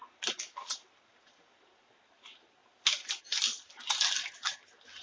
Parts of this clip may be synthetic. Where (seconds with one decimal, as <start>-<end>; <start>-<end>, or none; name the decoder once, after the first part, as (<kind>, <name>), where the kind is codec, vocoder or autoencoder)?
none